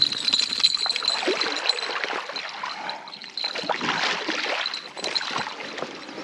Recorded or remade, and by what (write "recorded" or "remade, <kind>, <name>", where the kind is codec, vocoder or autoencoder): recorded